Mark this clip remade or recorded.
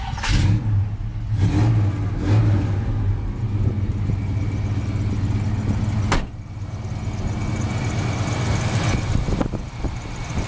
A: recorded